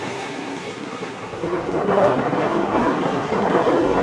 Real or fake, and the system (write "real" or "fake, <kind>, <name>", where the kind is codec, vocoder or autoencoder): fake, codec, SNAC